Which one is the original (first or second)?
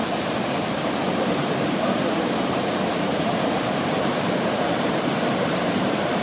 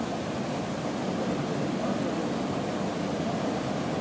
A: second